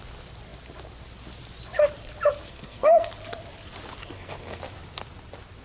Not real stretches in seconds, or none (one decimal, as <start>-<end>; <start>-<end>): 2.5-3.1; 4.0-4.6